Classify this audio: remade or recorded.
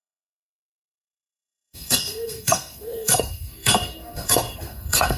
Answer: remade